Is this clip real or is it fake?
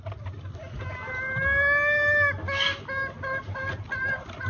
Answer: real